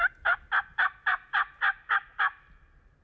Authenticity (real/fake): real